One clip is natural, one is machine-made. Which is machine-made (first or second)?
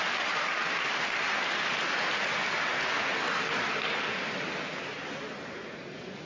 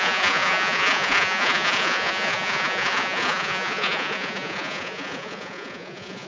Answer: second